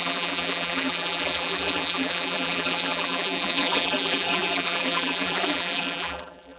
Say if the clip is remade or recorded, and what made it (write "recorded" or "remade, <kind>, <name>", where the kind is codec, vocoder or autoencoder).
remade, vocoder, BigVGAN v2